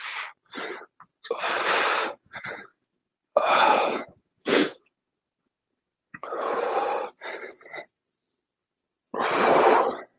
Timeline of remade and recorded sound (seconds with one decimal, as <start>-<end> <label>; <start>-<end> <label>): 0.0-2.0 recorded; 2.0-7.0 remade; 7.0-10.2 recorded